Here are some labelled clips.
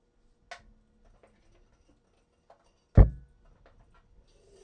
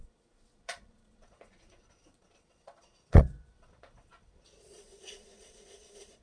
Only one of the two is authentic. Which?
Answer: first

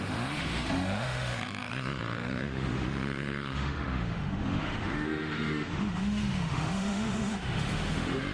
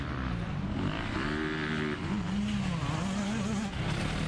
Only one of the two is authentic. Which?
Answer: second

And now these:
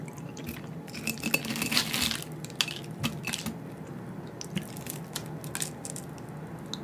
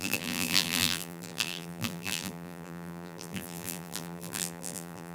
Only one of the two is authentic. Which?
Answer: first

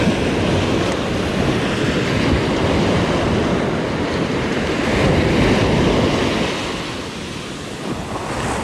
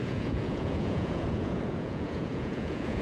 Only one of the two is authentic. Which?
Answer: first